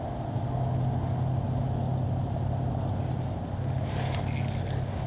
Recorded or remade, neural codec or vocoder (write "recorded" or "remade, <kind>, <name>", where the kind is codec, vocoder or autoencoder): recorded